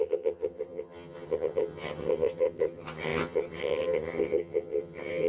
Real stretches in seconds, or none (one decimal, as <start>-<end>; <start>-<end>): none